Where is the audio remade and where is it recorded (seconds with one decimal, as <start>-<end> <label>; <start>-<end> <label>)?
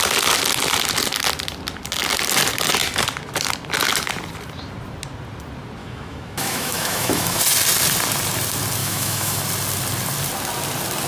0.0-5.8 recorded; 5.8-7.4 remade; 7.4-8.8 recorded; 8.8-9.4 remade; 9.4-11.1 recorded